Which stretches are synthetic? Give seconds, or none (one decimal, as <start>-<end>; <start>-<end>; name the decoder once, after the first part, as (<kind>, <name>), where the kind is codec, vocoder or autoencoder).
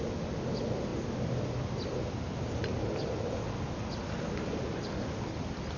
none